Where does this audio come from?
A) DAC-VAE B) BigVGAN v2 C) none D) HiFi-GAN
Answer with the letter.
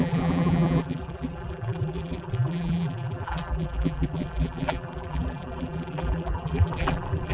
B